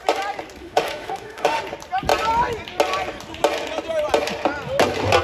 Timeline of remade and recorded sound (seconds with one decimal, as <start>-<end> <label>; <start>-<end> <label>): 0.0-0.6 recorded; 0.6-1.6 remade; 1.6-5.2 recorded